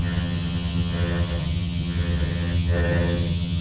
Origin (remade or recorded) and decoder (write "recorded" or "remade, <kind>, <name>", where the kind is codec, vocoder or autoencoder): remade, vocoder, HiFi-GAN